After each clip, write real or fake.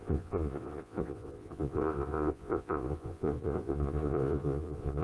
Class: fake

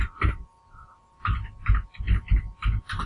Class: real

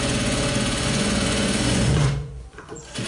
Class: fake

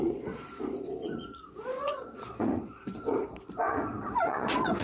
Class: fake